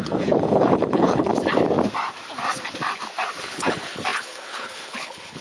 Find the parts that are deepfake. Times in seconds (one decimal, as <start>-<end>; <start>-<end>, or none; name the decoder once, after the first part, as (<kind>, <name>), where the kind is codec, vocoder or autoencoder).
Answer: 0.0-1.3 (codec, HILCodec); 3.4-5.4